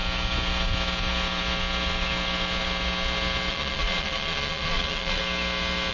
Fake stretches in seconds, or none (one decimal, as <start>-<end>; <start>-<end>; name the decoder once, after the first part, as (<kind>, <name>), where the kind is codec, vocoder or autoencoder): 3.5-5.2 (vocoder, Vocos)